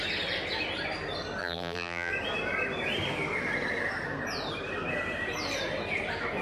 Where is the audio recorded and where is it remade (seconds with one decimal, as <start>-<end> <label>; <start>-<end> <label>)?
0.0-1.4 recorded; 1.4-2.1 remade; 2.1-6.4 recorded